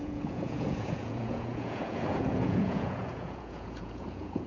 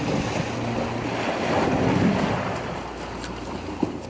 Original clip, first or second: second